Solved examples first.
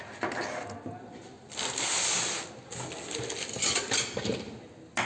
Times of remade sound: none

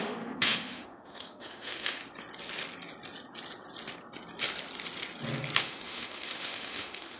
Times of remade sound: 0.0-2.0; 5.6-7.2

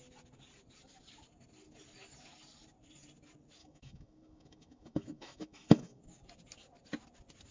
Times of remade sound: 3.6-6.0